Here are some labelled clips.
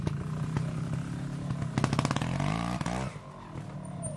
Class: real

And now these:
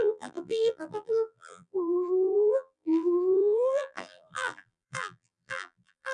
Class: fake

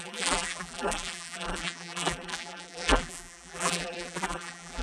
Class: fake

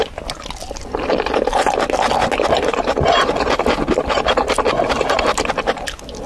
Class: real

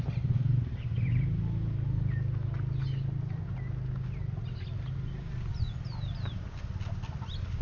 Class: real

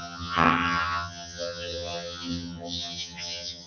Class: fake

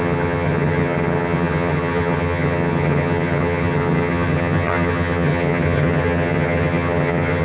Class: fake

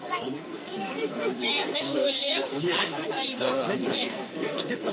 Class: fake